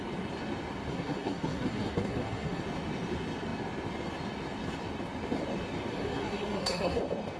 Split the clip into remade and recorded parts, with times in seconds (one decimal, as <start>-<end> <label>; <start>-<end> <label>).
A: 0.0-0.9 recorded; 0.9-2.6 remade; 2.6-5.9 recorded; 5.9-7.0 remade; 7.0-7.4 recorded